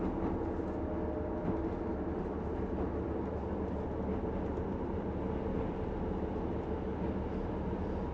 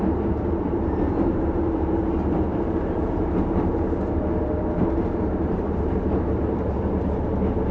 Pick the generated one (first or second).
second